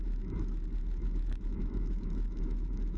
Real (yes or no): no